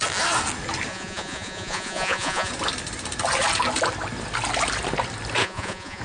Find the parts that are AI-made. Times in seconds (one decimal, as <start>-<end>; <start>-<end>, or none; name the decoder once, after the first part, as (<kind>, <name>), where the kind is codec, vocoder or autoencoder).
0.9-2.5 (vocoder, Vocos); 5.4-6.0

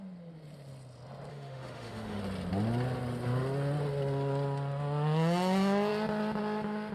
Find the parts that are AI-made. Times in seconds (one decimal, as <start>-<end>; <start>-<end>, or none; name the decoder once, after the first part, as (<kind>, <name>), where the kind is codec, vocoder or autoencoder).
1.3-2.2 (autoencoder, DAC-VAE)

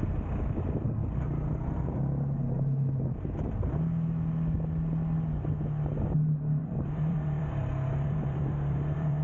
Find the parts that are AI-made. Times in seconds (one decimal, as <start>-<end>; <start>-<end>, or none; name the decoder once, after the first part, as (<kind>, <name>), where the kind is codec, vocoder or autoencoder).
6.6-9.2 (vocoder, BigVGAN v2)

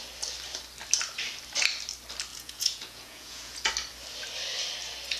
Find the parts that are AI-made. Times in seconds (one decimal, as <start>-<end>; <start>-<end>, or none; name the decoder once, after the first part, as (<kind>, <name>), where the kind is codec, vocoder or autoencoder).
2.3-3.7 (vocoder, Vocos)

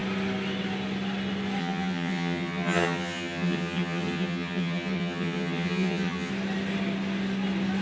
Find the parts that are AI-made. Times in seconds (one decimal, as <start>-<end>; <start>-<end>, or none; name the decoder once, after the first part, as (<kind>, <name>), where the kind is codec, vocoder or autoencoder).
1.6-6.3 (vocoder, HiFi-GAN)

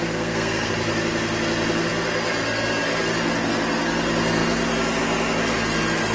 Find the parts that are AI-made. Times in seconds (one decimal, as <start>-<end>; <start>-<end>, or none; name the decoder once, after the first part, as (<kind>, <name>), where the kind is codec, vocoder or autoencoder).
0.0-0.7 (codec, SNAC)